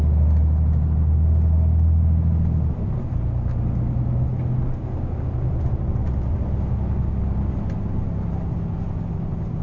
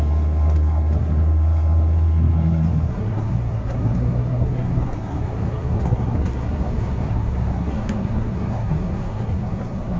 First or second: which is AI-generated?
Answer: second